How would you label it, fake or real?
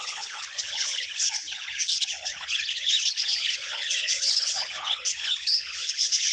fake